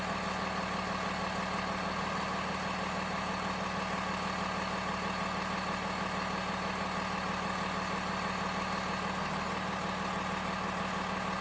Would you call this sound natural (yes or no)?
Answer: yes